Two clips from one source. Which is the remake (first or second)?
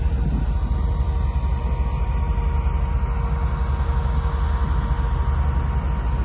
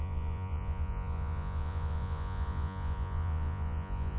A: second